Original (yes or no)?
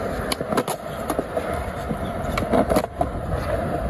yes